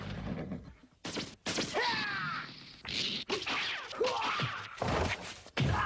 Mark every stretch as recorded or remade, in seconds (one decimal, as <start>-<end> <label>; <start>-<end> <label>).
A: 0.0-0.8 remade; 0.8-4.3 recorded; 4.3-5.9 remade